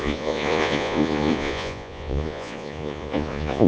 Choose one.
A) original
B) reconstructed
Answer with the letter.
B